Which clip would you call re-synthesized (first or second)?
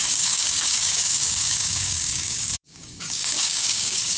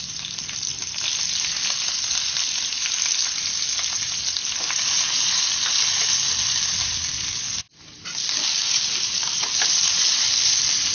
first